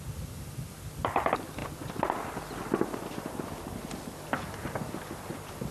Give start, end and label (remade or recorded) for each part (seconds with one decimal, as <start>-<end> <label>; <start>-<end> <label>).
0.0-5.7 recorded